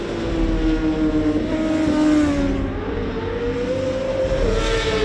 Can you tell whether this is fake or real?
real